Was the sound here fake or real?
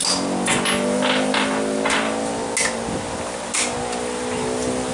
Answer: real